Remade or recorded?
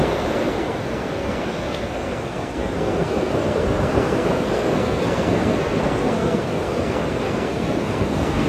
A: remade